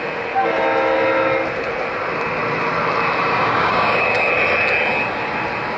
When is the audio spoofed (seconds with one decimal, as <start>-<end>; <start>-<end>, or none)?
3.3-4.3